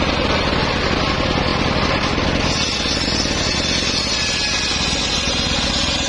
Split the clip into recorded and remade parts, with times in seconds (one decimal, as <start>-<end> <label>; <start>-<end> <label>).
0.0-6.1 recorded